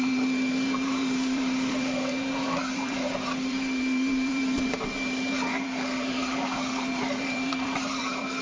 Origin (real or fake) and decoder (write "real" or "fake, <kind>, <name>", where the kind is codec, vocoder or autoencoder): fake, vocoder, BigVGAN v2